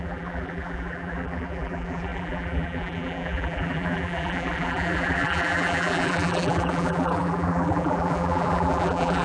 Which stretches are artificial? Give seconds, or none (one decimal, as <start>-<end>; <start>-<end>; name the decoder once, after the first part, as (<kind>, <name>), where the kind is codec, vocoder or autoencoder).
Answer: 0.0-9.2 (vocoder, BigVGAN v2)